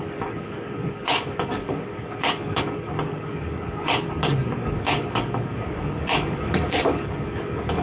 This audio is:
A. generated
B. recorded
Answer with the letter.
A